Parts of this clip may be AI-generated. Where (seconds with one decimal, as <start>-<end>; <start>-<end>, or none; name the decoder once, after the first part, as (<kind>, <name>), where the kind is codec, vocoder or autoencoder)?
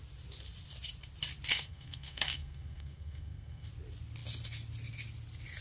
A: 1.5-3.7 (codec, SNAC)